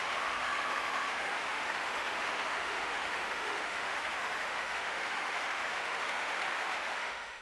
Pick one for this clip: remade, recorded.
remade